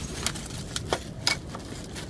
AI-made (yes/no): no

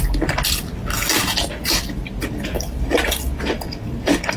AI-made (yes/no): no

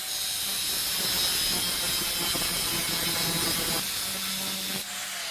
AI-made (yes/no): no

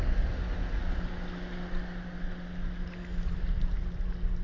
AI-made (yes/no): no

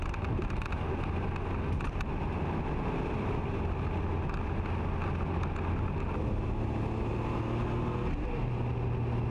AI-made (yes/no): no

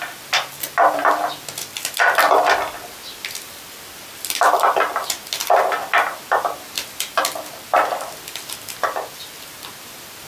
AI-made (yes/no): no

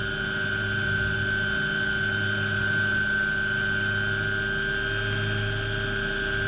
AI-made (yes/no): no